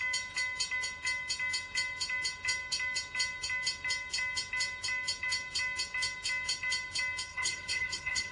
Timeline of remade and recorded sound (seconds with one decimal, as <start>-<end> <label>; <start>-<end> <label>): 0.0-7.3 recorded; 7.3-8.3 remade